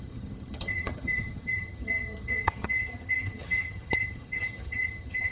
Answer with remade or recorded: remade